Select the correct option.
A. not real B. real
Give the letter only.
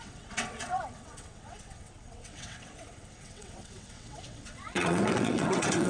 A